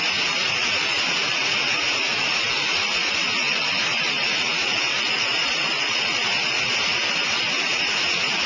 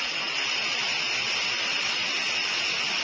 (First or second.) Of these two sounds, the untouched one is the second